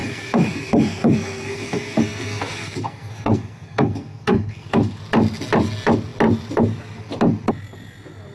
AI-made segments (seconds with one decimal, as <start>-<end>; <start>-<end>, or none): 0.0-5.0

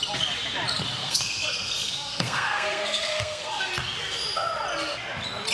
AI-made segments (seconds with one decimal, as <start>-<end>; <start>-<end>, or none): 1.0-3.7